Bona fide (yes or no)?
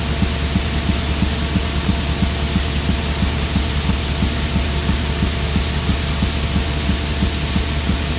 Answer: yes